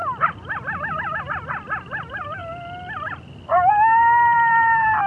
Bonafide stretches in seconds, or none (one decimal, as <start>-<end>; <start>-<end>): 0.0-1.2; 2.4-3.7